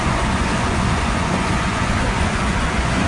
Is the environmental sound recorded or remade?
remade